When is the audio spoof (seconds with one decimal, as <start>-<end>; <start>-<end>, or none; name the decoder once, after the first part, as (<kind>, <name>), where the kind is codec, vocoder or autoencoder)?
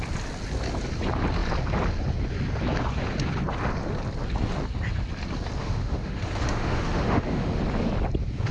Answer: 5.6-7.6 (autoencoder, DAC-VAE)